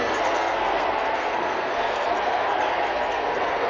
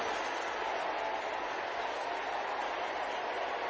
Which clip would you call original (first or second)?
second